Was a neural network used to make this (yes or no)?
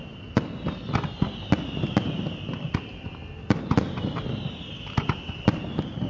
no